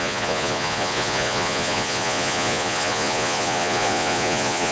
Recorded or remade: remade